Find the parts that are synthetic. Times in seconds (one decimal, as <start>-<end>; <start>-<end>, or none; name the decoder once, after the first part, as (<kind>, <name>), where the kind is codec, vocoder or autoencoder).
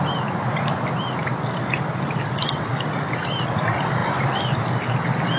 1.2-2.6 (vocoder, BigVGAN v2); 4.0-5.4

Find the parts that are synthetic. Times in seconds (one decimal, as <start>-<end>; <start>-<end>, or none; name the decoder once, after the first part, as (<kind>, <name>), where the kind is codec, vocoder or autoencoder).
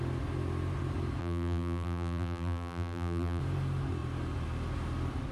1.2-3.4 (vocoder, BigVGAN v2)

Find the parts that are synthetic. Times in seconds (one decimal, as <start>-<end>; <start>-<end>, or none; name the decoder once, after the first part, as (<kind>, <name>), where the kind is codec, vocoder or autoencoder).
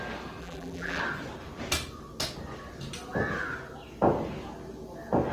0.4-1.0 (vocoder, BigVGAN v2)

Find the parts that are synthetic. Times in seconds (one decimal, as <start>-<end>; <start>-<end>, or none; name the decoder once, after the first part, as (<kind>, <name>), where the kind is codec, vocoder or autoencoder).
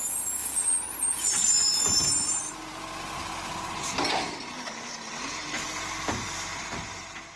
0.4-2.5 (vocoder, BigVGAN v2)